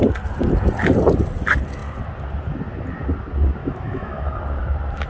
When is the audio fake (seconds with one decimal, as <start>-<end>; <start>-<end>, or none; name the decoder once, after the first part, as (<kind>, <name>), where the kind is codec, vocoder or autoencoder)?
3.6-4.4 (autoencoder, DAC-VAE)